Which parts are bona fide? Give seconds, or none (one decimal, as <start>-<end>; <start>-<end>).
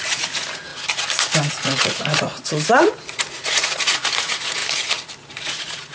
0.7-1.5; 4.6-5.3